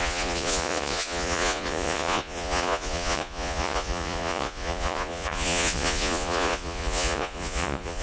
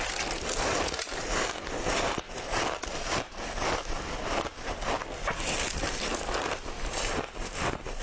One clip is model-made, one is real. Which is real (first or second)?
second